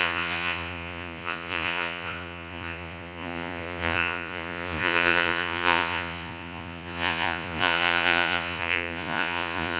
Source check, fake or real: fake